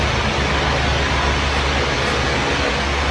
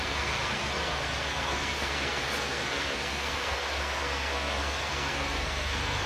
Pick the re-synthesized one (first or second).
second